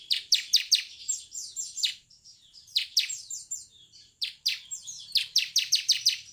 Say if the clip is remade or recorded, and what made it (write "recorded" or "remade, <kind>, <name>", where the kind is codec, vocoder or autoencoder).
remade, vocoder, BigVGAN v2